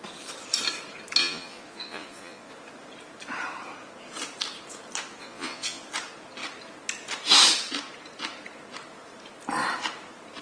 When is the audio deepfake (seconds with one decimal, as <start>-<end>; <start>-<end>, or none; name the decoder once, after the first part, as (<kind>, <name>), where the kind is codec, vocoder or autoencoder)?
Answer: 1.2-2.5 (vocoder, Vocos); 5.2-5.8